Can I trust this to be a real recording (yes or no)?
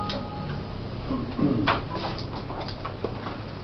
yes